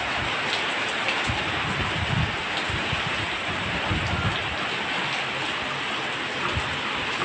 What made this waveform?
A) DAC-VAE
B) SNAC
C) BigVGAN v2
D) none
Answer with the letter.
D